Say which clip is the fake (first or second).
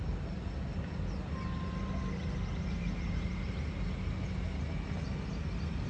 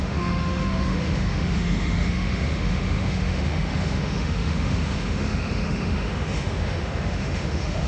second